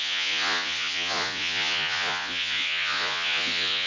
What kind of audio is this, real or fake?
fake